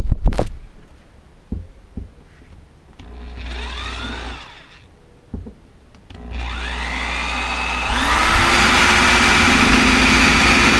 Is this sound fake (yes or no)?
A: no